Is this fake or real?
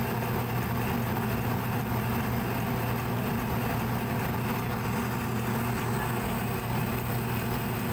real